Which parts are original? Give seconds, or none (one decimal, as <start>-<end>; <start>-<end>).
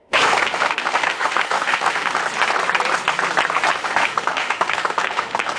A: 2.2-3.7